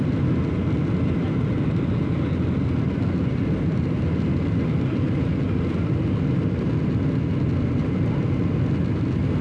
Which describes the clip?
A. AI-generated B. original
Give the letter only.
B